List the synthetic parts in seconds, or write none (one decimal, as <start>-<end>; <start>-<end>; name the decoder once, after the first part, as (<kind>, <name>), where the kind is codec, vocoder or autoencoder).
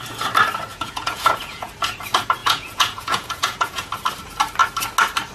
0.7-1.7 (vocoder, Vocos); 2.4-3.9